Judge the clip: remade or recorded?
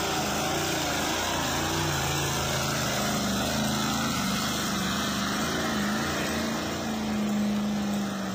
recorded